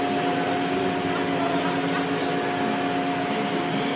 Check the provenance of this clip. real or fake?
real